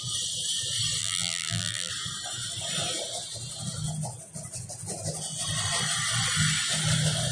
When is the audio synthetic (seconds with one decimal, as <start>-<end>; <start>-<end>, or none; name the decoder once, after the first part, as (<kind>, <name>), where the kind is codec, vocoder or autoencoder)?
1.0-1.9 (vocoder, BigVGAN v2)

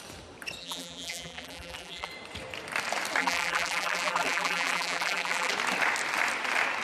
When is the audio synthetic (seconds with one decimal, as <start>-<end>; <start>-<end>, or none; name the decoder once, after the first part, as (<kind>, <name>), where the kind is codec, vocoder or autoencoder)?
0.6-2.1 (vocoder, BigVGAN v2); 3.2-5.5

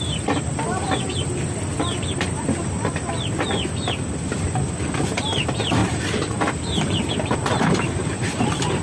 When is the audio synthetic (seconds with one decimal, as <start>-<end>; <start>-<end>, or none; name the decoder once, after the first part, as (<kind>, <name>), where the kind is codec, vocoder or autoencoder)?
5.8-7.1 (vocoder, BigVGAN v2); 7.5-8.8

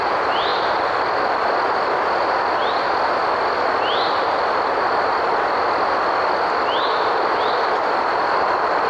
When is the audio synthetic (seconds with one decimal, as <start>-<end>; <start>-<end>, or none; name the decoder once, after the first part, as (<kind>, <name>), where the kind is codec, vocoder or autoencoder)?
none

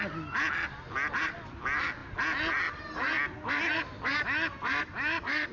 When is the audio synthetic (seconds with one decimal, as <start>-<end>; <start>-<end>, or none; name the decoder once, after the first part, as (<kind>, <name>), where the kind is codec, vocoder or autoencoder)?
none

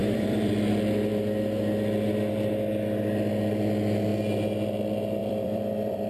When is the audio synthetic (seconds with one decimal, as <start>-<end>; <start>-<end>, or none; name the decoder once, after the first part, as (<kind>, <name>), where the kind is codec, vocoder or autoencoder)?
0.0-0.5 (vocoder, BigVGAN v2); 5.2-6.1